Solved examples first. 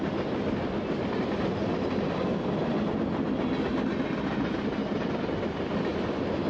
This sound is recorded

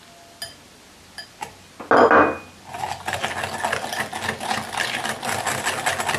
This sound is recorded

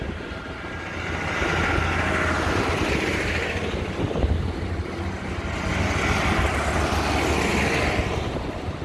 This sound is recorded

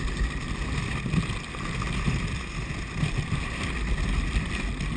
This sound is recorded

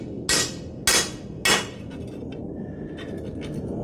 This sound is recorded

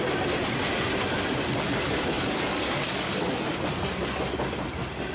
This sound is recorded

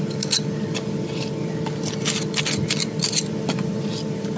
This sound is recorded